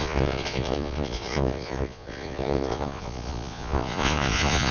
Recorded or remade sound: remade